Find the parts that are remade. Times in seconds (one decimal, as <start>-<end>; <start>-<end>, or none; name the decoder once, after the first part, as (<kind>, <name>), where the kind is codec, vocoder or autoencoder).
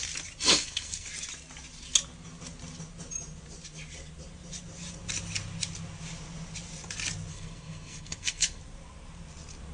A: 0.5-1.1 (codec, SNAC); 7.3-8.6